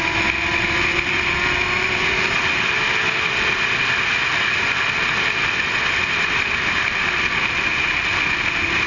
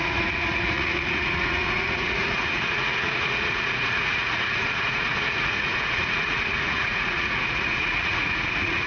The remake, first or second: second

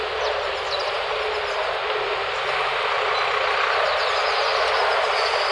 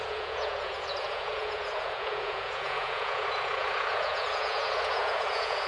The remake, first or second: second